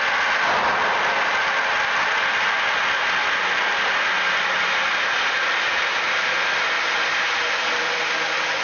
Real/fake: real